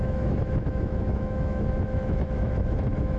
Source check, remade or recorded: remade